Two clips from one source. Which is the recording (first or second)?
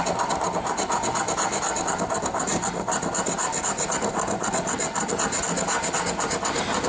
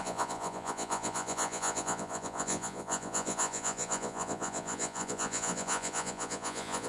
first